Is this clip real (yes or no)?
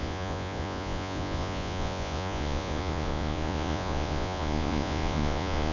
no